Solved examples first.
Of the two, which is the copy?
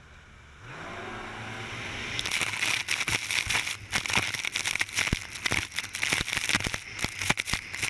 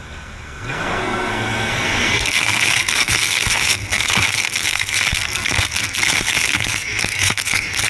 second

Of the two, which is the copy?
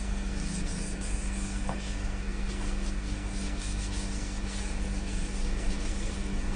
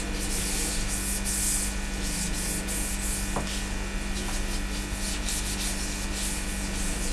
first